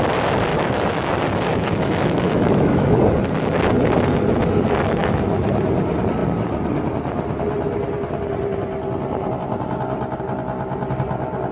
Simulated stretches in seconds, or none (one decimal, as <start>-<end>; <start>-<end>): 0.5-1.1; 1.5-3.0; 5.0-5.6